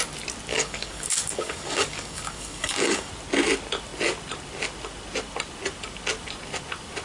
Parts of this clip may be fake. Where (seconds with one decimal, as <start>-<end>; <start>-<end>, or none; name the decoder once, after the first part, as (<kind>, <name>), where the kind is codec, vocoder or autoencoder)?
0.5-3.1 (codec, DAC)